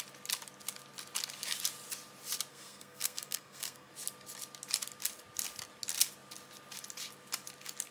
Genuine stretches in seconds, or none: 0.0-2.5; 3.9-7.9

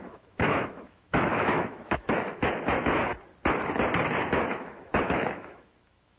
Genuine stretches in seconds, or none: 3.1-4.2

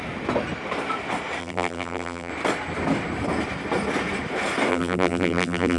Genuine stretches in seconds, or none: 0.0-1.4; 2.3-4.7

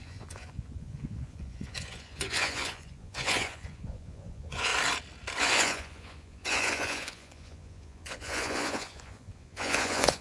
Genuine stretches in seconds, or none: 4.7-5.4

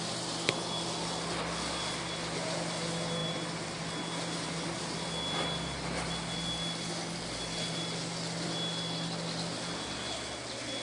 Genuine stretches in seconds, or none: 0.0-10.8

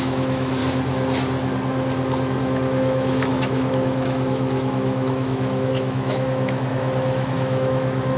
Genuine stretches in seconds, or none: 0.6-2.4

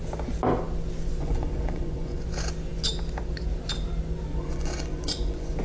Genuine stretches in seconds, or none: 0.0-1.2; 2.2-4.3